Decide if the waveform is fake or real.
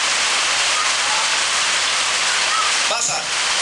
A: real